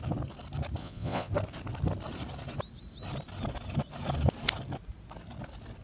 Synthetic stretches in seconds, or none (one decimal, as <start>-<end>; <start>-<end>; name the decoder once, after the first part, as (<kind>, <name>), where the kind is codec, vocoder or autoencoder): 0.8-1.3 (vocoder, Vocos)